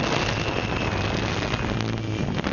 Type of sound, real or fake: real